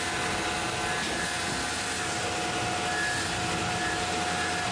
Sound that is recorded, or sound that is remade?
recorded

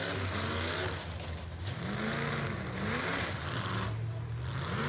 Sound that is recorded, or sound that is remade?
recorded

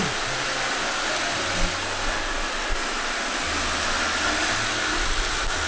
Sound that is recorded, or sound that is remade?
recorded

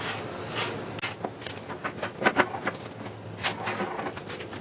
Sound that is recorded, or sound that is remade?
recorded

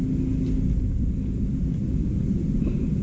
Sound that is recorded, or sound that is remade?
recorded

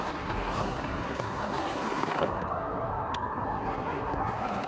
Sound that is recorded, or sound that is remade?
remade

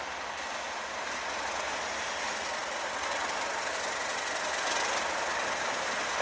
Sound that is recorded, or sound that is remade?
recorded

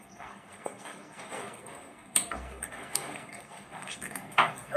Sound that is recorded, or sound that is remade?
remade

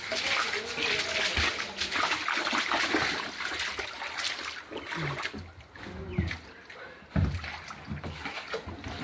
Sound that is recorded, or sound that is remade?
recorded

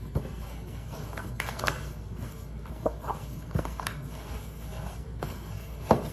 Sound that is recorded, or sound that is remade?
remade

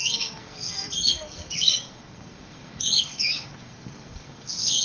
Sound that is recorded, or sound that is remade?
remade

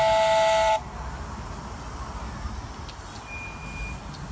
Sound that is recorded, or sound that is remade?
recorded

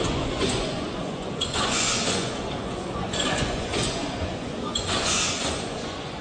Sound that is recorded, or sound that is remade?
remade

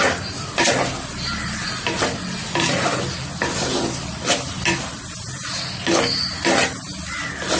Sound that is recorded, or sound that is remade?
recorded